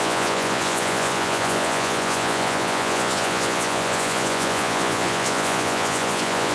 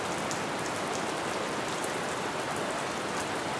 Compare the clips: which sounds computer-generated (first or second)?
first